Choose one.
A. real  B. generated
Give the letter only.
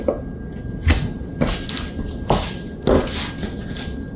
A